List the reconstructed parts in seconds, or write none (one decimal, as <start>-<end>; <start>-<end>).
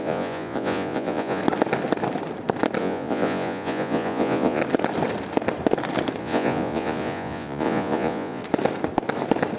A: 0.0-1.4; 2.8-4.6; 6.2-8.4